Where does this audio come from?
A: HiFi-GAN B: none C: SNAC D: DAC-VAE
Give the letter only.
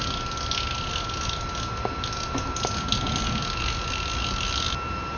B